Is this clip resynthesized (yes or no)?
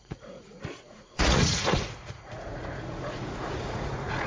yes